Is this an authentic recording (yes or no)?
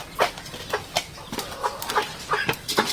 yes